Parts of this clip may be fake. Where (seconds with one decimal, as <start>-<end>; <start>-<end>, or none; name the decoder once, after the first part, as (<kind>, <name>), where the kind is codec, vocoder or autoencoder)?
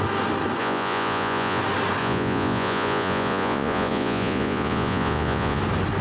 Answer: 0.6-1.6 (vocoder, Vocos); 2.0-5.6